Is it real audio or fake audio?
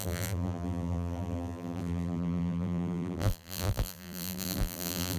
fake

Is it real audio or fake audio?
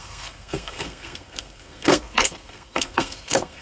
fake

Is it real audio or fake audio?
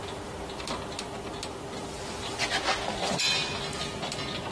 real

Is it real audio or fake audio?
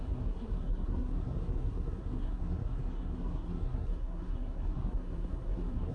fake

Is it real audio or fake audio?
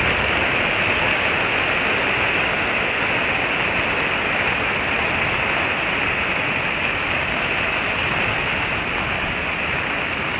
real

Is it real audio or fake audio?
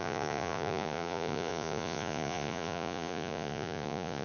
fake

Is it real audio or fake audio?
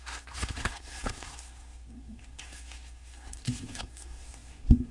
fake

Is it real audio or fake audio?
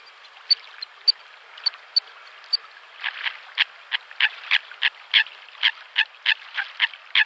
real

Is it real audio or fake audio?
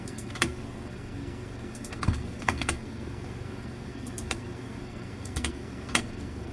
fake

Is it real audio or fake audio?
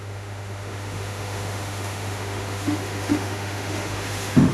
fake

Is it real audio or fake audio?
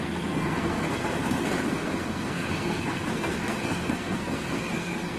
fake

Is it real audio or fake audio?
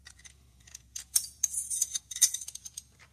fake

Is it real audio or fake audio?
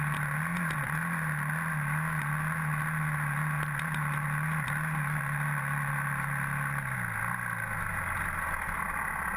real